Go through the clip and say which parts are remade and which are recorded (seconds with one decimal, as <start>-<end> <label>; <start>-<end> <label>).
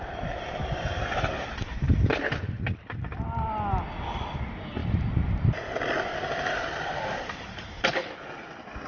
0.0-8.9 recorded